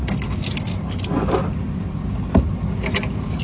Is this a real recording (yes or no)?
yes